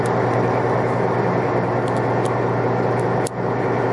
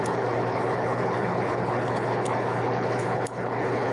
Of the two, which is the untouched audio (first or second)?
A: first